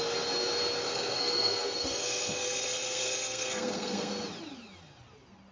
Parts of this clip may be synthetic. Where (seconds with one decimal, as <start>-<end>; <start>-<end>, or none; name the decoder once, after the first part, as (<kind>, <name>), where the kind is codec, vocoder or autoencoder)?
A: 0.8-4.1 (codec, SNAC)